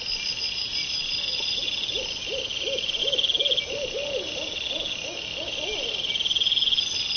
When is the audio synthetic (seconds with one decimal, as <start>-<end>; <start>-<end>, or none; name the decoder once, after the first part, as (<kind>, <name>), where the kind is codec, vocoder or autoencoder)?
none